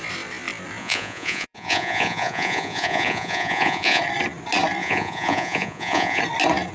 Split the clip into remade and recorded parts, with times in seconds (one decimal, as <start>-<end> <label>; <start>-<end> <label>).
0.0-0.8 recorded; 0.8-4.0 remade; 4.0-4.8 recorded; 4.8-6.2 remade; 6.2-6.7 recorded

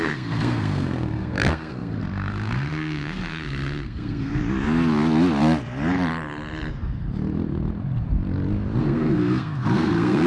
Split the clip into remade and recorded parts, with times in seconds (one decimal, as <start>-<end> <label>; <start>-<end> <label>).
0.0-4.4 remade; 4.4-8.8 recorded; 8.8-10.3 remade

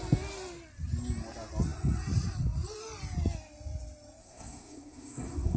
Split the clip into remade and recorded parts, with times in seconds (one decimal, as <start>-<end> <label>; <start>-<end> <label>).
0.0-4.2 recorded; 4.2-5.6 remade

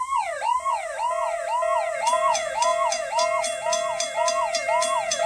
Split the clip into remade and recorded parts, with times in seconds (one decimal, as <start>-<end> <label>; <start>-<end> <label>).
0.0-5.3 recorded

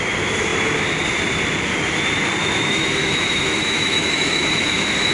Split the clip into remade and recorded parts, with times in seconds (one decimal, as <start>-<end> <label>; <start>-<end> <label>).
0.0-2.4 recorded; 2.4-5.1 remade